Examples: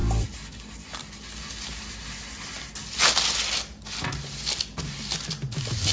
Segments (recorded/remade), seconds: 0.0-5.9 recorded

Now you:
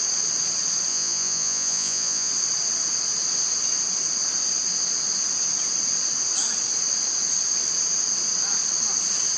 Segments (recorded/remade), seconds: 0.0-0.9 recorded; 0.9-2.3 remade; 2.3-9.4 recorded

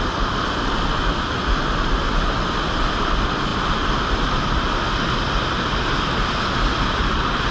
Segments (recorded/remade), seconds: 0.0-7.5 recorded

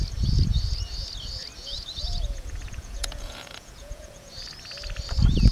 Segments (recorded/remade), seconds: 0.0-1.6 recorded; 1.6-4.3 remade; 4.3-5.5 recorded

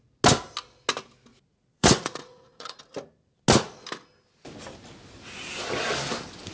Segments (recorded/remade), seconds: 0.0-1.3 recorded; 1.3-2.8 remade; 2.8-6.5 recorded

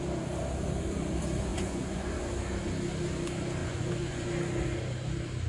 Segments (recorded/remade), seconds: 0.0-1.5 recorded; 1.5-2.2 remade; 2.2-3.6 recorded; 3.6-4.3 remade; 4.3-5.5 recorded

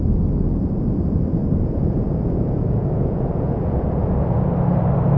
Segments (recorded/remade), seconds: 0.0-1.4 recorded; 1.4-4.5 remade; 4.5-5.2 recorded

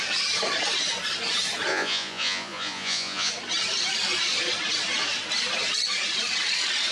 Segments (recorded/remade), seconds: 0.0-1.7 recorded; 1.7-3.3 remade; 3.3-6.9 recorded